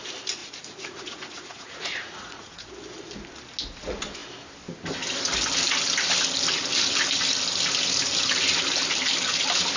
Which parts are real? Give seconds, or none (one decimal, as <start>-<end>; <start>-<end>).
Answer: 0.0-0.4; 2.7-9.8